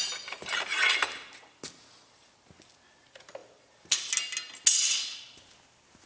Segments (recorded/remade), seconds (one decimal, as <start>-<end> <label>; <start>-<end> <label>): 0.0-6.1 recorded